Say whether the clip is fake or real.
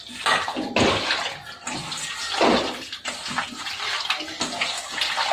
real